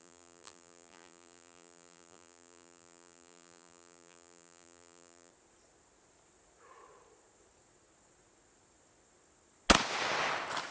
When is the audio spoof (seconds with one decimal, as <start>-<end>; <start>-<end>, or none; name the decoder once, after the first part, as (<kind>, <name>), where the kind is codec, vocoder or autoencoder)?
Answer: 0.0-5.3 (vocoder, BigVGAN v2)